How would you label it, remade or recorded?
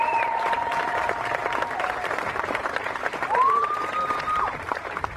remade